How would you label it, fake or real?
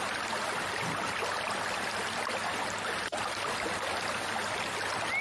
real